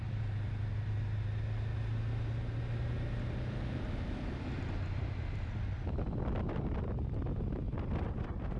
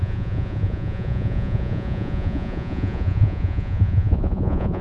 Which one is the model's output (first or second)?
second